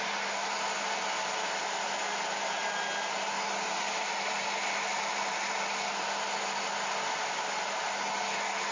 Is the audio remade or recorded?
recorded